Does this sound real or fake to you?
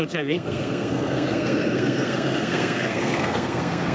fake